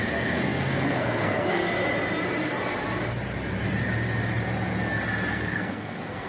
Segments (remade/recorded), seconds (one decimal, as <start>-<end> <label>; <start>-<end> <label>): 0.0-1.6 remade; 1.6-5.3 recorded; 5.3-6.3 remade